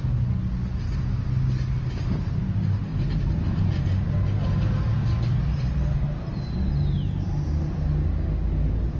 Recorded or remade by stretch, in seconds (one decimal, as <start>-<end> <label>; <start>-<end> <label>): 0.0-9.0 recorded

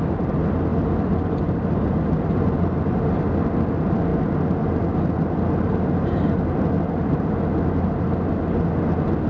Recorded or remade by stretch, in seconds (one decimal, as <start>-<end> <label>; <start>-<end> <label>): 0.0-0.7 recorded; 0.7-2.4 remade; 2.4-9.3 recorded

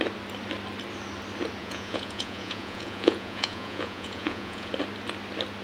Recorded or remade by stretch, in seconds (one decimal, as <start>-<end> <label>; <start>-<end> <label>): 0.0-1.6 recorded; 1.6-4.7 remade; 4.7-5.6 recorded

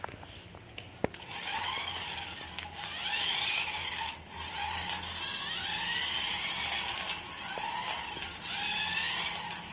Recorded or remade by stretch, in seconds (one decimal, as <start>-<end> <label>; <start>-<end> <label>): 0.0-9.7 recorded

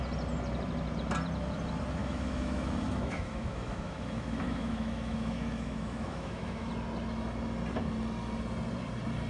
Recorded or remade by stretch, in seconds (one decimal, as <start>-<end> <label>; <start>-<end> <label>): 0.0-2.0 recorded; 2.0-6.7 remade; 6.7-9.3 recorded